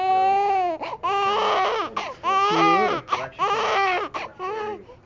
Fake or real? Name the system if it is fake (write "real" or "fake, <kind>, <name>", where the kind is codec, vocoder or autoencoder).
real